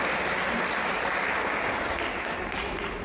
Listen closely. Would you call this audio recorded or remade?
recorded